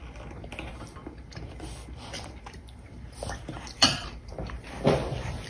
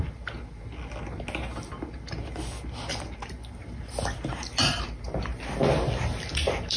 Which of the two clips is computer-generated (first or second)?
first